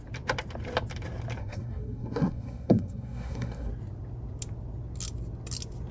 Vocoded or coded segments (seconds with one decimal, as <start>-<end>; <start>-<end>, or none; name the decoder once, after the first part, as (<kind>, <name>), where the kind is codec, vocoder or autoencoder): 1.4-3.7 (codec, SNAC)